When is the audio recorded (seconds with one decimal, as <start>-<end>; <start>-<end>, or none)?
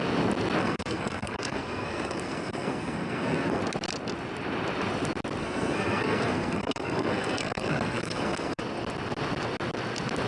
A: 0.0-0.6; 3.6-5.4; 8.6-10.3